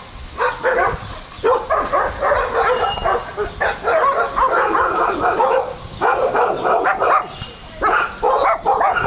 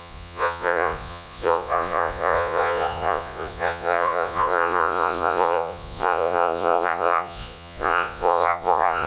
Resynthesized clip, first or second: second